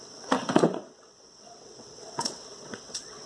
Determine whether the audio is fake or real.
fake